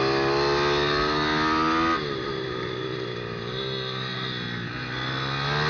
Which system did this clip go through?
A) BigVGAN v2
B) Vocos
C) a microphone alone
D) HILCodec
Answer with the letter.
C